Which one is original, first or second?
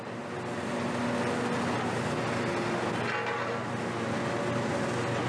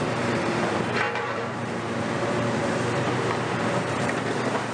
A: first